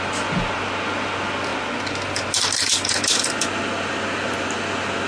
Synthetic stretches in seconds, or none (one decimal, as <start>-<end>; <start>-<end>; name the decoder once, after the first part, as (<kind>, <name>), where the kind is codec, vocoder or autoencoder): none